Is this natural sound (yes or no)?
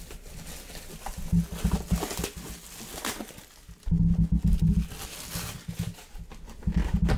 yes